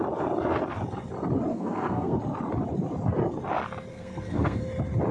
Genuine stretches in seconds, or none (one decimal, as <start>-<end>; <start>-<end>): 0.0-1.5; 2.2-3.9; 4.6-5.1